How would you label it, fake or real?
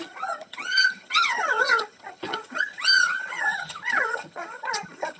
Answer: fake